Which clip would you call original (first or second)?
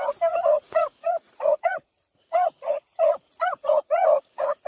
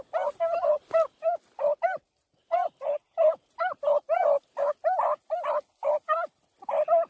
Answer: second